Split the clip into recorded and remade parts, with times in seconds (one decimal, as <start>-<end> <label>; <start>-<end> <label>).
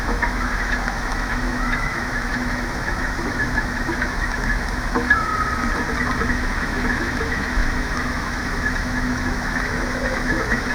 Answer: 0.0-5.3 remade; 5.3-6.3 recorded; 6.3-10.7 remade